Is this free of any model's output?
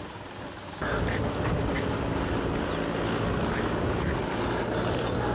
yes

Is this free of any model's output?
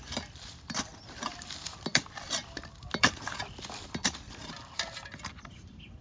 no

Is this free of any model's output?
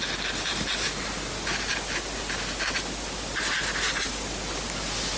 yes